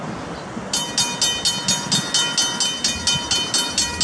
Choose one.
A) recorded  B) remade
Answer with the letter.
A